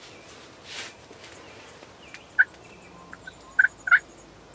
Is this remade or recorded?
recorded